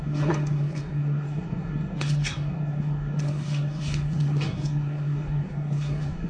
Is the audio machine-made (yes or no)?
yes